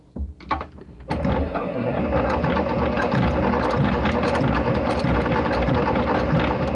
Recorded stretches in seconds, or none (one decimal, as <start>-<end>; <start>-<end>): 0.0-1.4; 2.0-6.8